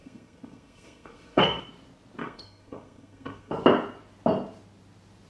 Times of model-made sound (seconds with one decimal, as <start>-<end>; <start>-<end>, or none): 0.0-1.6; 2.2-3.5